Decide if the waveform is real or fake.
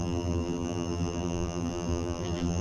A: fake